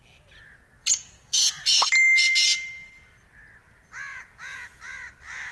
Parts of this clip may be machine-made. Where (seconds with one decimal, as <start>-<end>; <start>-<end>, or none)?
0.8-1.5; 4.1-4.8